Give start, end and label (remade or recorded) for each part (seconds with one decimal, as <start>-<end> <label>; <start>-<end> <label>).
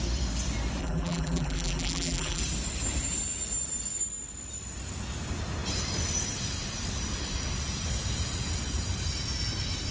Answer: 0.0-0.8 recorded; 0.8-2.4 remade; 2.4-9.9 recorded